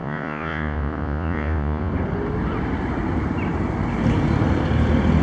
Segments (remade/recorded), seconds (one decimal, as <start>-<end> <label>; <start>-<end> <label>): 0.0-1.9 remade; 1.9-5.2 recorded

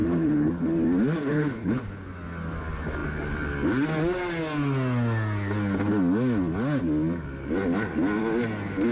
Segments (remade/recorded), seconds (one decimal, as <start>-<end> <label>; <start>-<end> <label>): 0.0-0.5 remade; 0.5-1.2 recorded; 1.2-1.9 remade; 1.9-8.9 recorded

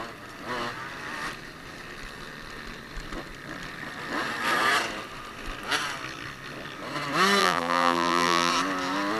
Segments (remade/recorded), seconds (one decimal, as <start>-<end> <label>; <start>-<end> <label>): 0.0-7.4 recorded; 7.4-8.5 remade; 8.5-9.2 recorded